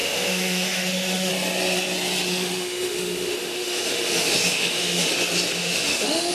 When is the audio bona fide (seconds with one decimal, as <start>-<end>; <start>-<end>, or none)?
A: 1.3-2.3; 5.1-5.6